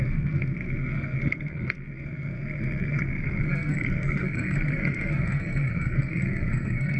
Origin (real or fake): fake